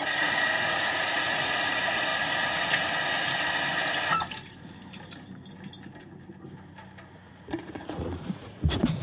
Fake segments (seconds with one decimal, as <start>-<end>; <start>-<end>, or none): 0.0-2.1; 7.1-9.0